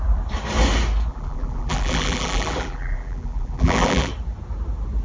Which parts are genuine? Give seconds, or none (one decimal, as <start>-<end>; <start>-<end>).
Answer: 0.0-1.1; 4.1-5.0